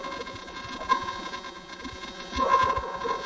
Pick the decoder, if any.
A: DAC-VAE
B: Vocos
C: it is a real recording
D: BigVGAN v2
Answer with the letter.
B